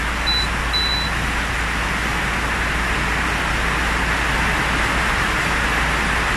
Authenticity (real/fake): real